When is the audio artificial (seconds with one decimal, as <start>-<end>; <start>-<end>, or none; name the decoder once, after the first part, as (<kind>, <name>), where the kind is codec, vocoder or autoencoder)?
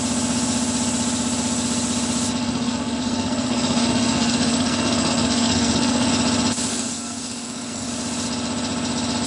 2.4-6.1 (codec, SNAC); 6.7-7.9